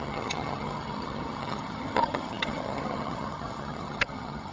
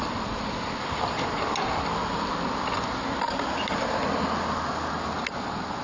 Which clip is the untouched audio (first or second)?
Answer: second